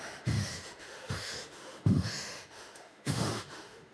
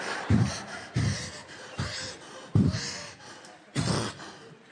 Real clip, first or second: second